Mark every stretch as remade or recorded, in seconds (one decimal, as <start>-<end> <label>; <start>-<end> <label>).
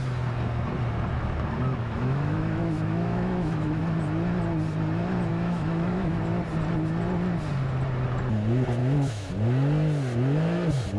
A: 0.0-1.8 recorded; 1.8-3.8 remade; 3.8-5.3 recorded; 5.3-6.2 remade; 6.2-8.8 recorded; 8.8-9.3 remade; 9.3-11.0 recorded